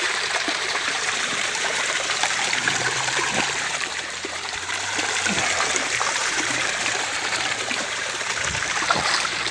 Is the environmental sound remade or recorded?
remade